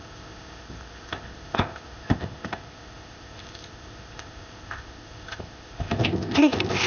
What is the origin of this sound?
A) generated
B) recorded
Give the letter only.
A